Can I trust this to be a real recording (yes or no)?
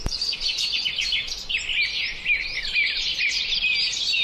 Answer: yes